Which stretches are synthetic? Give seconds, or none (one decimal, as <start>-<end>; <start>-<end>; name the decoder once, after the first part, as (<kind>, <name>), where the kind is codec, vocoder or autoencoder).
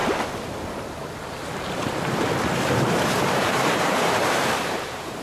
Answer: 2.7-5.2 (vocoder, BigVGAN v2)